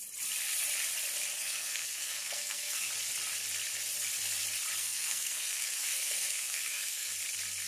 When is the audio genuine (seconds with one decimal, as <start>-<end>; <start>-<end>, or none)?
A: 0.0-1.4; 2.9-4.8; 7.1-7.7